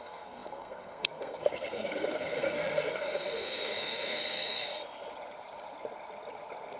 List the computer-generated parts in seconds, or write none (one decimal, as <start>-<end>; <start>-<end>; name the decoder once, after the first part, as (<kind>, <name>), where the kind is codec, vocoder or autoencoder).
0.0-4.7 (codec, SNAC)

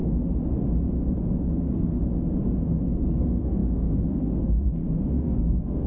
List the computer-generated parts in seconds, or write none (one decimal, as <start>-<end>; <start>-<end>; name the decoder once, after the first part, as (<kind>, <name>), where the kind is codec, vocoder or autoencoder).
1.5-2.0 (codec, SNAC); 2.8-5.9

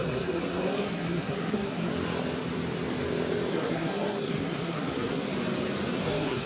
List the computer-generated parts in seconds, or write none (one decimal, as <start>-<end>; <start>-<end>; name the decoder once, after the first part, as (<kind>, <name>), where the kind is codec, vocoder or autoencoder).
0.0-1.9 (codec, SNAC); 3.5-5.3; 5.9-6.5

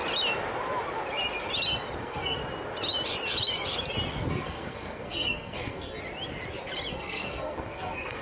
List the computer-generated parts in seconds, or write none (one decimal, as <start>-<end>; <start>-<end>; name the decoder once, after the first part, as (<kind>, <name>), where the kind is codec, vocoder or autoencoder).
2.0-2.4 (codec, SNAC); 4.3-6.0; 6.9-8.2

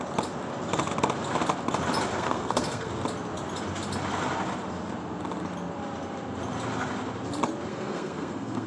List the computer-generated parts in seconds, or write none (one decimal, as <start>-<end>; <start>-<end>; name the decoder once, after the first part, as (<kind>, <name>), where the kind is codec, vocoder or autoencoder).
2.1-2.9 (codec, SNAC); 7.7-8.7

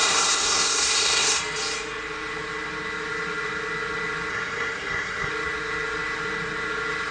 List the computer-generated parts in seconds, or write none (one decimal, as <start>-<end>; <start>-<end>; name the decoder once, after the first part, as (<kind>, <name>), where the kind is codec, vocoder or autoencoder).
0.0-1.4 (codec, SNAC); 4.3-5.3

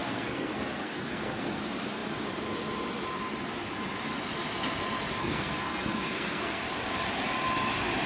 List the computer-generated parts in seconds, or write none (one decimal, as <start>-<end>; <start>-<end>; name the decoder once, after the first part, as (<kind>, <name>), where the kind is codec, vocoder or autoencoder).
0.0-1.6 (codec, SNAC); 5.2-6.6

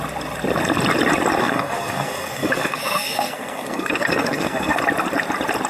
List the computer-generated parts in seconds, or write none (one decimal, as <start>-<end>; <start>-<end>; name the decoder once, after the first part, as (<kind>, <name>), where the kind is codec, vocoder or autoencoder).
1.4-4.8 (codec, SNAC)